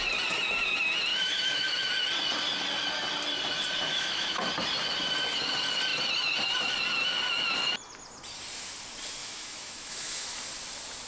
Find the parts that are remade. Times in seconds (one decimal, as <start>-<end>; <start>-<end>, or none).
1.1-1.9; 3.9-4.5; 9.2-10.4